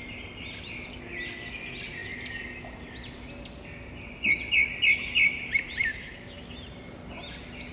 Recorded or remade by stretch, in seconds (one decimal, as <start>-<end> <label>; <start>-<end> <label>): 0.0-5.9 recorded; 5.9-6.5 remade; 6.5-7.7 recorded